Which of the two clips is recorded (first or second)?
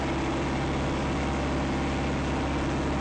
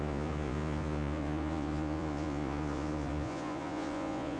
first